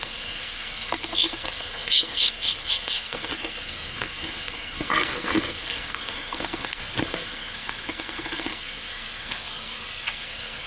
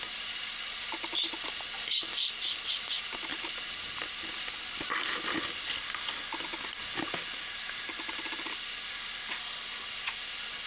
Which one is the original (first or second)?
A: second